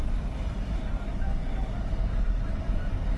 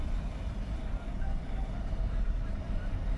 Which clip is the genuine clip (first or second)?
first